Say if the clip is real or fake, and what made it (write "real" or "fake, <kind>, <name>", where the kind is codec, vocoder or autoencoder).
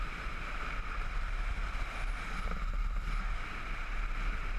fake, vocoder, BigVGAN v2